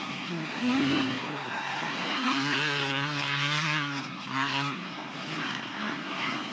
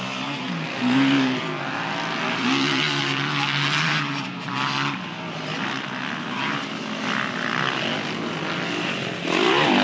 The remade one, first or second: first